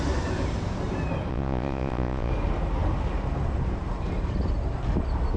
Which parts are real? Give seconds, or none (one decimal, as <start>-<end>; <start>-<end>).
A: 0.0-1.3; 2.3-5.4